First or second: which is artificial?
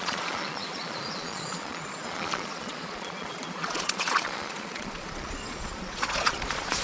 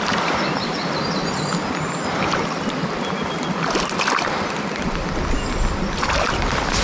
first